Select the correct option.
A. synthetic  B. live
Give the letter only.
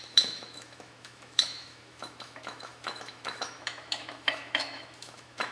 A